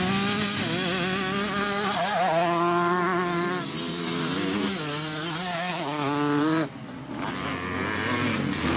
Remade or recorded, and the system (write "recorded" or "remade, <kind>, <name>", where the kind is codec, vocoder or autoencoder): recorded